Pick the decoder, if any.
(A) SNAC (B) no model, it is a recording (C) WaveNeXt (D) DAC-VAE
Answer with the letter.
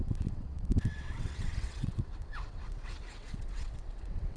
C